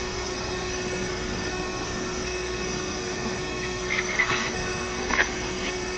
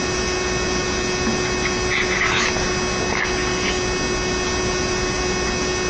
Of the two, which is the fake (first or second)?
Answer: first